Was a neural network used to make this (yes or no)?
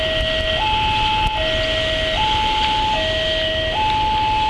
no